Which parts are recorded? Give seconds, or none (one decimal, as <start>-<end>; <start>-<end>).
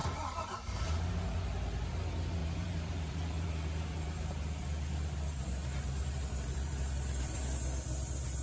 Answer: 1.1-2.4; 7.4-8.4